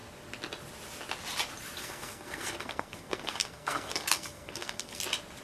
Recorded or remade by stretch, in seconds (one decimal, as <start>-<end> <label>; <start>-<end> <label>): 0.0-1.8 recorded; 1.8-5.0 remade; 5.0-5.4 recorded